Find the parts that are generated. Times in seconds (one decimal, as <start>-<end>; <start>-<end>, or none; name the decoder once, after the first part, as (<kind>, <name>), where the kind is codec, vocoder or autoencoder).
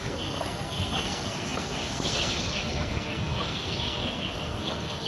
0.0-5.1 (codec, SNAC)